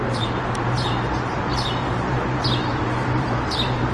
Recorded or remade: remade